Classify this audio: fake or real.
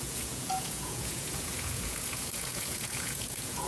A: fake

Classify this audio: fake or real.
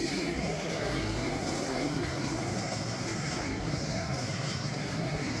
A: fake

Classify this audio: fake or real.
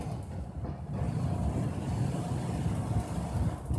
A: real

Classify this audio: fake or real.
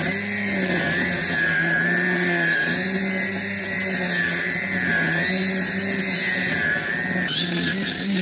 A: real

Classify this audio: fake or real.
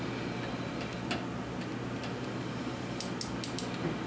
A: real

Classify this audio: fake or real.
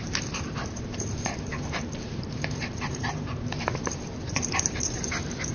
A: fake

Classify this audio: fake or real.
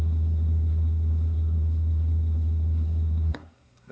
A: fake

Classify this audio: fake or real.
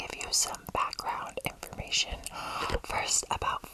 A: real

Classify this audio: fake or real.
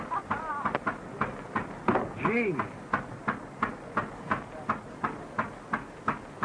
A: real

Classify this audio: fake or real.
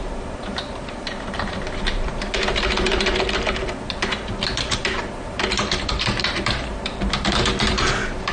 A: fake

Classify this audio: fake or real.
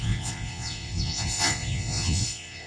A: fake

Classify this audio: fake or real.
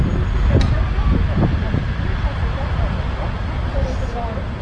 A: real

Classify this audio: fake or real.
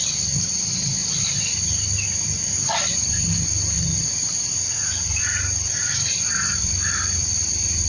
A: real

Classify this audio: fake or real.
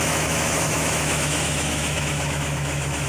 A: fake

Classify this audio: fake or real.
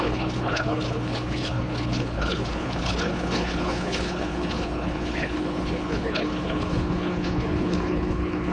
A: fake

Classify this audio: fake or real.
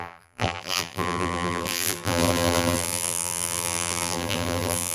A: fake